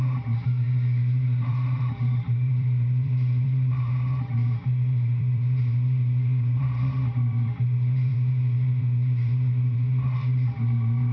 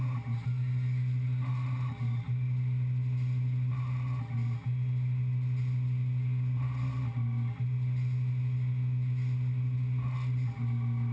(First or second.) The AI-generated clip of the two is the first